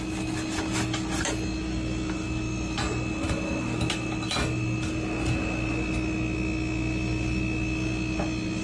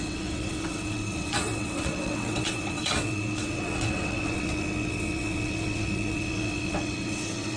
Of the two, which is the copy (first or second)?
second